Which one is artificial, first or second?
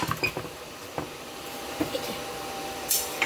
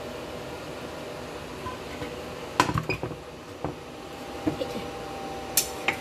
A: first